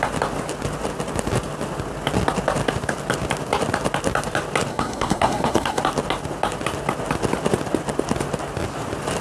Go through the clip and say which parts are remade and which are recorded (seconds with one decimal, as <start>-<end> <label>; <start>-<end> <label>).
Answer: 0.0-4.7 recorded; 4.7-5.8 remade; 5.8-9.2 recorded